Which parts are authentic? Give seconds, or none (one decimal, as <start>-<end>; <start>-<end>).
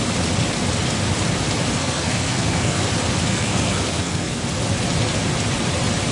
0.0-1.8; 2.8-3.3; 4.4-6.1